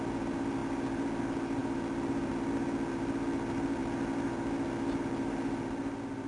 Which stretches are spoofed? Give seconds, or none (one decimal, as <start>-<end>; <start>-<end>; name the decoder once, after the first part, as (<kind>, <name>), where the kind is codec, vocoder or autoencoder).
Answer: none

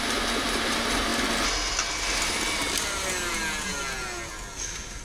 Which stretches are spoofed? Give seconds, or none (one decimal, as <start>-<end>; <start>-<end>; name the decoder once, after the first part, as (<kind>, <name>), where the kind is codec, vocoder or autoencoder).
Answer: none

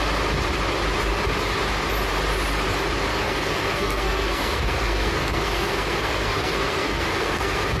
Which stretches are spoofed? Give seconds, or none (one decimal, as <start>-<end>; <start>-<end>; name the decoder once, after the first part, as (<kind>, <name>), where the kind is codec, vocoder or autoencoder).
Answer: 3.1-7.8 (codec, SNAC)

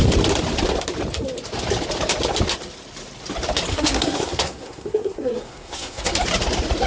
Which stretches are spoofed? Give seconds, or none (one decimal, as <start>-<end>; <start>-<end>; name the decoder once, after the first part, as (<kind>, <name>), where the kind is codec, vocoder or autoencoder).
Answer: 3.7-6.1 (codec, SNAC)

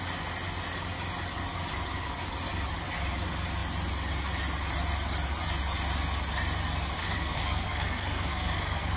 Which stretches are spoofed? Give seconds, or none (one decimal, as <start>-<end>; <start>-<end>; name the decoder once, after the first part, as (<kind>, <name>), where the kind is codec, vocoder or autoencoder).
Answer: 7.0-9.0 (codec, SNAC)

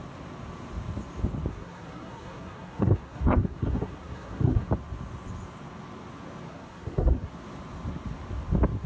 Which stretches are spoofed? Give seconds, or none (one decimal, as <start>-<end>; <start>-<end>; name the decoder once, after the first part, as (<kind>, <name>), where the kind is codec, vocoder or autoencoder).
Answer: 1.5-4.7 (codec, SNAC); 6.5-7.3

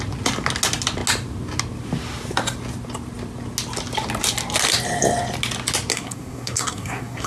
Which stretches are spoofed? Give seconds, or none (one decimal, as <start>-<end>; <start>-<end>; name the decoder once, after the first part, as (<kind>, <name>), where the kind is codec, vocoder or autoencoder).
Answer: 5.9-7.3 (codec, SNAC)

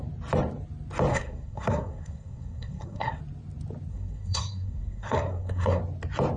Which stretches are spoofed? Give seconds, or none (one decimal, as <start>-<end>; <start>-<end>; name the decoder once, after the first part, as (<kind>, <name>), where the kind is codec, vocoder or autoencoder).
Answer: 1.1-3.2 (codec, SNAC); 3.9-5.8